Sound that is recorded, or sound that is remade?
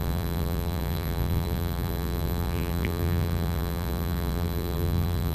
remade